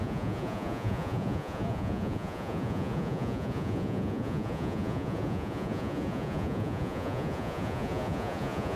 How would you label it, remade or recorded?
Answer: remade